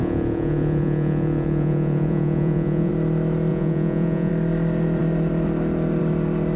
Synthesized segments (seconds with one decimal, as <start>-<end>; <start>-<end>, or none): 0.0-2.9; 3.5-4.3